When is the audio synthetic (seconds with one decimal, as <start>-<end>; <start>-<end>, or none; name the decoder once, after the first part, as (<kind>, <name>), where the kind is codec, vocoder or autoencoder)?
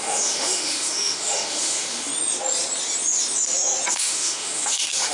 0.0-2.1 (autoencoder, DAC-VAE); 3.9-5.1